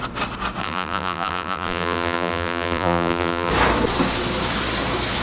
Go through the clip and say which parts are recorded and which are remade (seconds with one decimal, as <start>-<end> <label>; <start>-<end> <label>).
0.0-0.6 recorded; 0.6-3.5 remade; 3.5-5.2 recorded